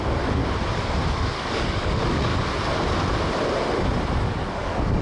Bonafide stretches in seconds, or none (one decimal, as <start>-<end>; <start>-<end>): 0.4-1.1; 2.3-4.2